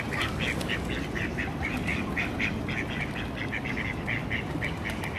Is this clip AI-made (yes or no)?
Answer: no